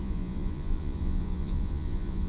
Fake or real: fake